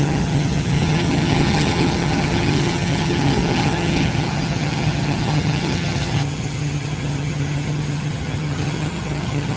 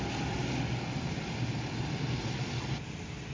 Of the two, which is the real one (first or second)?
second